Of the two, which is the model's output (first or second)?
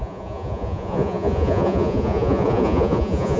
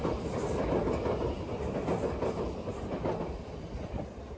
first